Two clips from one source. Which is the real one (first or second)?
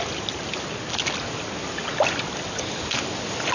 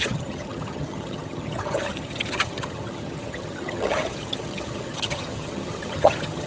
first